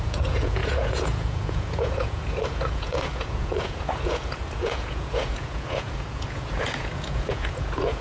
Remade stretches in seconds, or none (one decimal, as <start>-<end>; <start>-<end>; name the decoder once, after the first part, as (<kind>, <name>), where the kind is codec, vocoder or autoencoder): 0.0-8.0 (vocoder, Vocos)

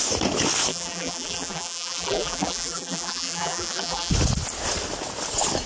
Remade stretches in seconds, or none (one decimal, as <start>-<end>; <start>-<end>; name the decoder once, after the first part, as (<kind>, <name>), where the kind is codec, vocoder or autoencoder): 0.7-4.1 (vocoder, BigVGAN v2)

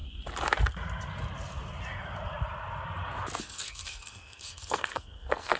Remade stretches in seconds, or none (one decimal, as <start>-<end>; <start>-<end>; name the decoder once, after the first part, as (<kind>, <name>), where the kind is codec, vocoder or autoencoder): 3.4-5.6 (codec, SNAC)